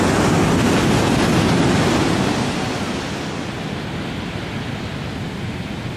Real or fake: real